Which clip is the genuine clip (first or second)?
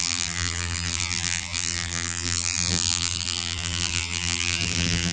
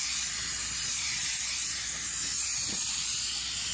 second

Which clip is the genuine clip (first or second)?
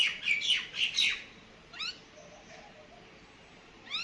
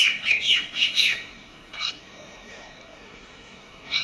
first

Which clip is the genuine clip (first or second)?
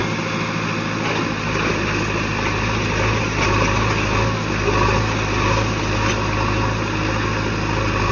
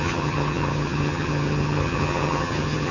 first